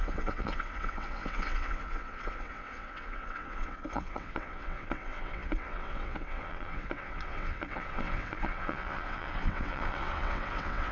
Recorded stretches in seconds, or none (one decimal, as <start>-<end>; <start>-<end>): none